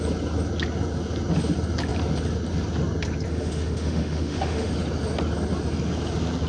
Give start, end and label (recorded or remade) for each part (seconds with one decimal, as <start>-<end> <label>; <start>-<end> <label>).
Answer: 0.0-3.3 recorded; 3.3-4.7 remade; 4.7-6.5 recorded